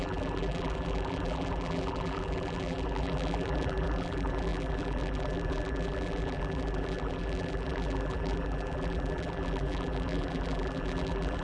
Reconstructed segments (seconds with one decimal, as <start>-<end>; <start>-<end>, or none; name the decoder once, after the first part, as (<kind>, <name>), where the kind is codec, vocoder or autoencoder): 0.0-11.4 (vocoder, BigVGAN v2)